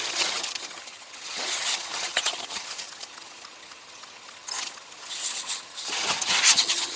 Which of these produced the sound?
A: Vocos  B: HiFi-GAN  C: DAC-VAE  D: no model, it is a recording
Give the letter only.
B